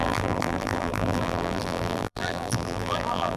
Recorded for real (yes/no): no